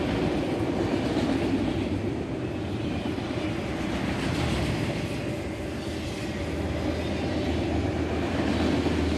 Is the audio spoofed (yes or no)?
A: no